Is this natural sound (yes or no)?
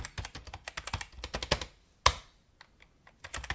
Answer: yes